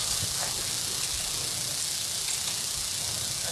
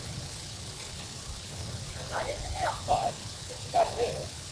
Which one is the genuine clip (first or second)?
first